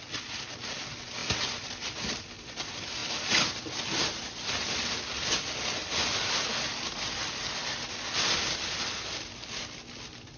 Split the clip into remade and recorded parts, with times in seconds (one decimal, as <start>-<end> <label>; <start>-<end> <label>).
0.0-10.4 recorded